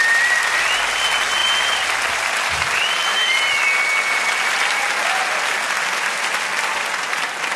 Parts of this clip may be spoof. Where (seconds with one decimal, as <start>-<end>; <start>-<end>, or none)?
none